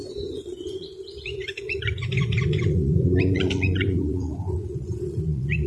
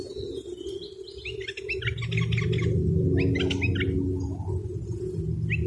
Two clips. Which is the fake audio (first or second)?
first